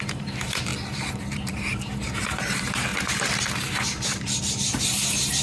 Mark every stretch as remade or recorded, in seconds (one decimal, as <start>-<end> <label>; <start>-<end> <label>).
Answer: 0.0-0.7 remade; 0.7-1.2 recorded; 1.2-2.9 remade; 2.9-4.4 recorded; 4.4-5.4 remade